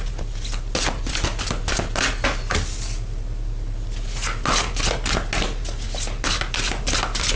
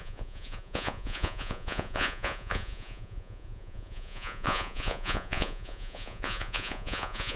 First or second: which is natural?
first